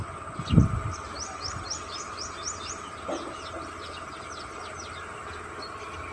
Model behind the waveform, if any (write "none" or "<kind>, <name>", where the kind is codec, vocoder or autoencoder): none